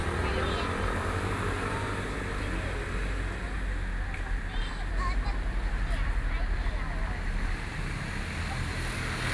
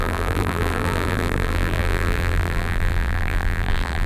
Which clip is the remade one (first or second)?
second